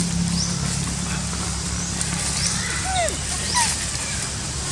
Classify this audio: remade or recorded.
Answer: recorded